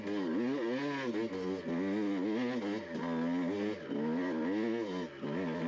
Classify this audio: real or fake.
real